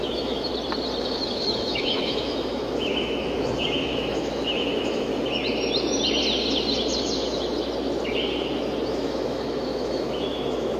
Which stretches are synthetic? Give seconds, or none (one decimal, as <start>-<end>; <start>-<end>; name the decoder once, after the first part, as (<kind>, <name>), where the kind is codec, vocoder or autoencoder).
0.0-0.5 (autoencoder, DAC-VAE); 1.0-5.1; 8.9-10.8